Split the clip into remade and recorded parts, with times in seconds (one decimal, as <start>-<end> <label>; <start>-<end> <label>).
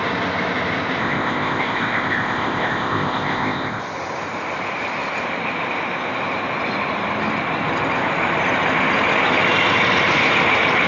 0.0-1.0 recorded; 1.0-3.8 remade; 3.8-10.9 recorded